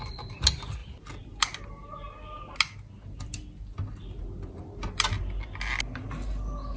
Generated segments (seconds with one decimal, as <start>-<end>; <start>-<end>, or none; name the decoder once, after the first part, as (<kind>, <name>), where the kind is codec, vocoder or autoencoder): none